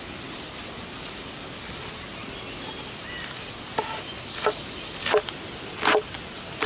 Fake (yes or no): no